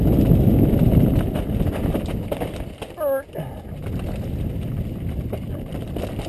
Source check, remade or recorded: recorded